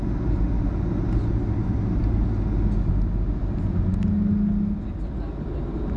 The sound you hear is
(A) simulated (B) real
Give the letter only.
B